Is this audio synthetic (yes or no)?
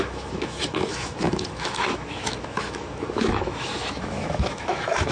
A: yes